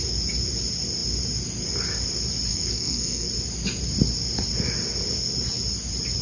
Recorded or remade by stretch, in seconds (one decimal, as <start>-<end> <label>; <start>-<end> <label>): 0.0-2.5 recorded; 2.5-3.3 remade; 3.3-6.2 recorded